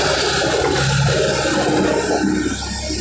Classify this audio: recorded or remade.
recorded